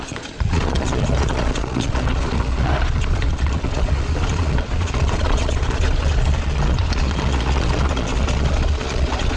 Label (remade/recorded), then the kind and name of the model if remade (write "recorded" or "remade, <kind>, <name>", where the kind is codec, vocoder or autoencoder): remade, vocoder, Vocos